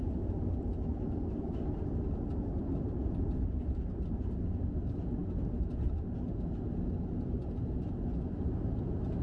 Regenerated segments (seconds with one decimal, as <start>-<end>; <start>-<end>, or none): none